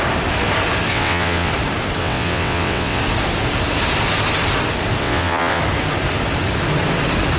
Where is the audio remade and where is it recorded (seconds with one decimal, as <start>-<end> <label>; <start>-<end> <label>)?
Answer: 0.0-0.9 recorded; 0.9-1.5 remade; 1.5-2.0 recorded; 2.0-3.0 remade; 3.0-5.0 recorded; 5.0-5.6 remade; 5.6-7.4 recorded